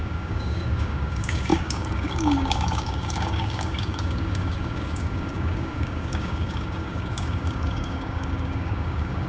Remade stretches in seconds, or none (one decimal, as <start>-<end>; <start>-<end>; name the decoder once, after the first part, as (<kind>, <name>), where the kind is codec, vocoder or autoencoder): 0.0-9.3 (codec, DAC)